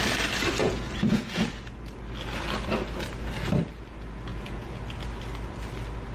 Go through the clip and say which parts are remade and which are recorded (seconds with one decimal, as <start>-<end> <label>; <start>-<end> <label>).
0.0-0.6 recorded; 0.6-1.7 remade; 1.7-4.3 recorded; 4.3-4.8 remade; 4.8-6.1 recorded